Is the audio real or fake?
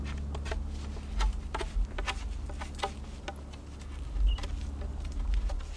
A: real